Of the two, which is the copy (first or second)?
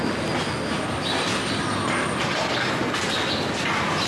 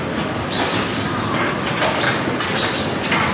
second